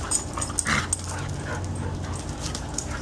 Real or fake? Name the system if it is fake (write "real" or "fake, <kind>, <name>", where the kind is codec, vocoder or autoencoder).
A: real